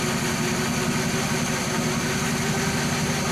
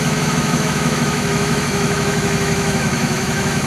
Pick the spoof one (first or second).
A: second